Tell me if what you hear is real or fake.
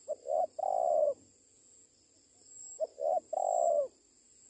real